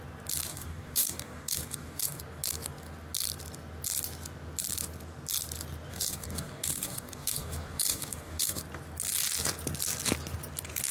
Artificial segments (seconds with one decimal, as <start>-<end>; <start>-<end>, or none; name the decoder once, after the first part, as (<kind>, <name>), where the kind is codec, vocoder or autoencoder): 0.5-2.2 (codec, DAC); 5.9-8.6